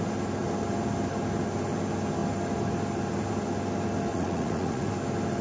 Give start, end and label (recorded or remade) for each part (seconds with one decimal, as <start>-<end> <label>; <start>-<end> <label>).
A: 0.0-4.1 recorded; 4.1-4.9 remade; 4.9-5.4 recorded